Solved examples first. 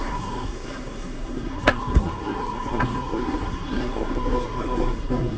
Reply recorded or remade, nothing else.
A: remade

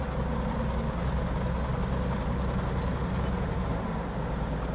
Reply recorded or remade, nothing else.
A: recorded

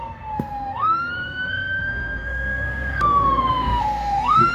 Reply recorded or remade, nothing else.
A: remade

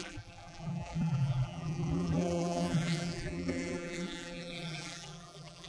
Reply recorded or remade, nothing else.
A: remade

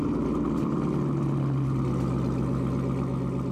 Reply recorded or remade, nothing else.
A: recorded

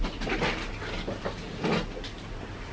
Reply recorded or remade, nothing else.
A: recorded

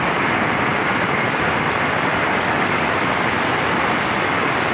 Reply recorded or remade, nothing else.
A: recorded